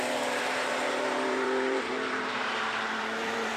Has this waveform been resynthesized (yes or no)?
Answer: yes